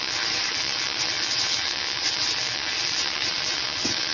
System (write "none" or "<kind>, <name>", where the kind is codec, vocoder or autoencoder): vocoder, WaveNeXt